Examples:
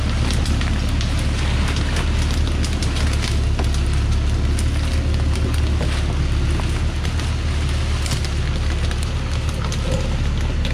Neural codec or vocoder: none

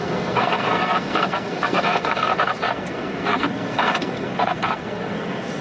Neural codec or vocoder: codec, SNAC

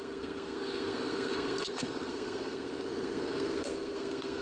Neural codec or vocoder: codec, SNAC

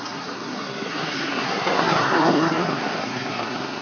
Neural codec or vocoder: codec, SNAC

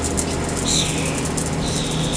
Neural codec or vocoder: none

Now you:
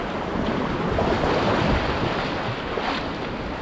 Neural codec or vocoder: none